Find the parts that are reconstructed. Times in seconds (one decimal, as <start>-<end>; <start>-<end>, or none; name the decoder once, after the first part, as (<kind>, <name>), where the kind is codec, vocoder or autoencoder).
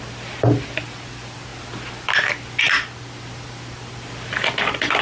0.0-1.5 (vocoder, BigVGAN v2); 2.6-5.0